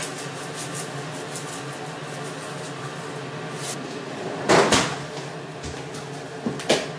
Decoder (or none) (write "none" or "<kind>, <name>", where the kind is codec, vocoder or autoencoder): none